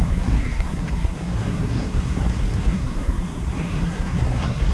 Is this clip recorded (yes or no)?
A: no